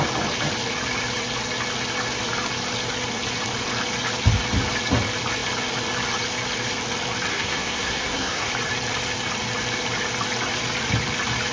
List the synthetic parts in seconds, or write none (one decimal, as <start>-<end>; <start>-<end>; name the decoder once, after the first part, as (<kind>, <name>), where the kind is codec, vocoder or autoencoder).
7.3-8.5 (codec, SNAC)